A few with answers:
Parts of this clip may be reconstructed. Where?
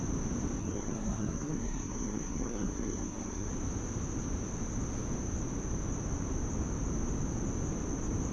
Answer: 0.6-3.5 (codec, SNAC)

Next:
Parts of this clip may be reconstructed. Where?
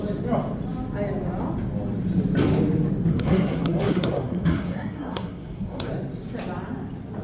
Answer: 3.1-5.9 (codec, SNAC)